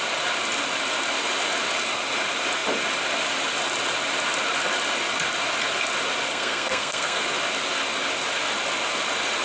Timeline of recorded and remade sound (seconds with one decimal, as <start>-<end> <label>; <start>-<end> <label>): 0.0-6.3 recorded; 6.3-7.2 remade; 7.2-9.4 recorded